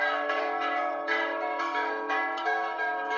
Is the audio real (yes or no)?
no